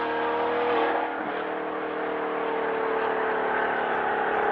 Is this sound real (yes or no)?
yes